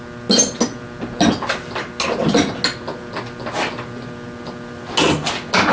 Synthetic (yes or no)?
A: no